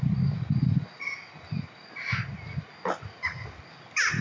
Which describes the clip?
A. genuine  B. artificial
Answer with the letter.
A